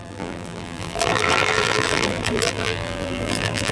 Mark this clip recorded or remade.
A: remade